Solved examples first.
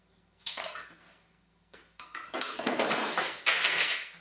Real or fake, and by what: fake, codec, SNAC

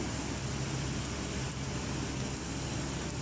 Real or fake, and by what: real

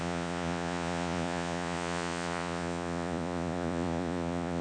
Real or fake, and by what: fake, vocoder, Vocos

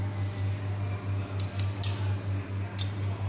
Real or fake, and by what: real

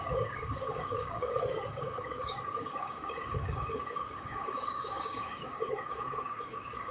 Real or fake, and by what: fake, codec, DAC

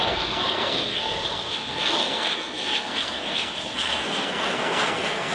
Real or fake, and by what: fake, codec, SNAC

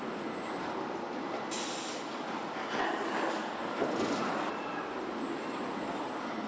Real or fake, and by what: real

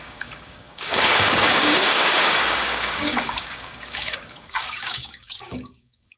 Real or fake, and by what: fake, codec, DAC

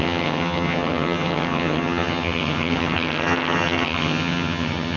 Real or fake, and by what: fake, vocoder, HiFi-GAN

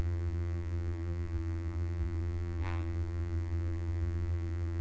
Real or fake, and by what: fake, vocoder, BigVGAN v2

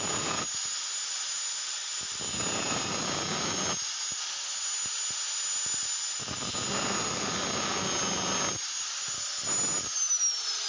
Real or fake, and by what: real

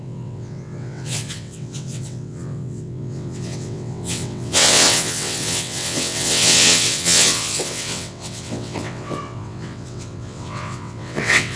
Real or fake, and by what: fake, vocoder, WaveNeXt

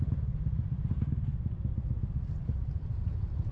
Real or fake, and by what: real